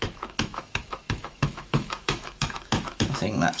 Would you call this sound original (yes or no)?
no